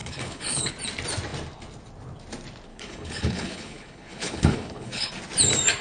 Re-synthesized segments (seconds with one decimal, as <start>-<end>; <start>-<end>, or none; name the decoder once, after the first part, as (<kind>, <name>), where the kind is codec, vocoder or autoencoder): 0.0-0.7 (codec, HILCodec); 2.7-5.1